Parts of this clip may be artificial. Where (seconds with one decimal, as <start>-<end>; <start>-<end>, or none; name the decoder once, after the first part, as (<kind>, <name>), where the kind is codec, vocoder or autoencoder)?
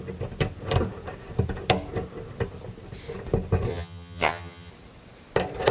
3.7-4.7 (vocoder, HiFi-GAN)